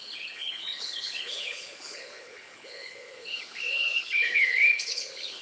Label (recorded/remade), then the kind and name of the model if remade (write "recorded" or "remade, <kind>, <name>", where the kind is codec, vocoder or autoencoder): remade, codec, HILCodec